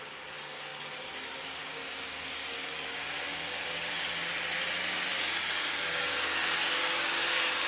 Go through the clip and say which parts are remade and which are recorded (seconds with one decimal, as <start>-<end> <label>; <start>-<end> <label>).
0.0-4.3 remade; 4.3-5.1 recorded; 5.1-7.7 remade